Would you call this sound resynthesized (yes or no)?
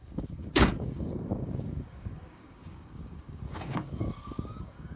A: yes